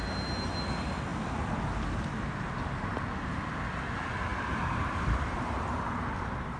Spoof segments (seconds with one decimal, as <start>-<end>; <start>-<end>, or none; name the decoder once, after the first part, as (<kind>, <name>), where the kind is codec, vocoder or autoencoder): none